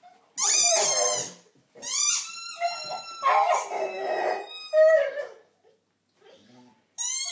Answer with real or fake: real